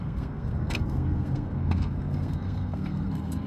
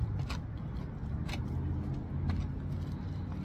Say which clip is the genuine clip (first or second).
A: second